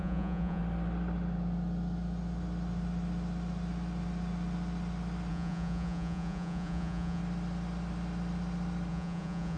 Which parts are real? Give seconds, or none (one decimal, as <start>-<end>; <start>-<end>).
0.6-5.3; 7.2-8.9